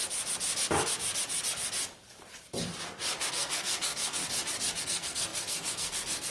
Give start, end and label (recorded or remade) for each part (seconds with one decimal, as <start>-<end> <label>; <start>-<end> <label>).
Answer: 0.0-3.3 recorded; 3.3-4.2 remade; 4.2-4.8 recorded; 4.8-6.3 remade